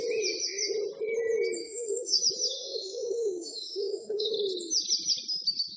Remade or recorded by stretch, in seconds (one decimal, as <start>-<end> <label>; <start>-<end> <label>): 0.0-1.6 recorded; 1.6-2.2 remade; 2.2-2.6 recorded; 2.6-4.3 remade; 4.3-5.8 recorded